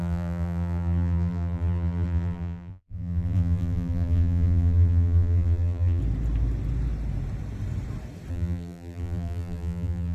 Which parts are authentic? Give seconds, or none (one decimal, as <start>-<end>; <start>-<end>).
6.0-8.3